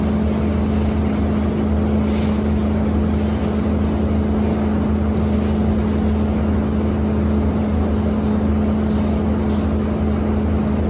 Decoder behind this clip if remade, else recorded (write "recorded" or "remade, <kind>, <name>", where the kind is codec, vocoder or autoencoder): recorded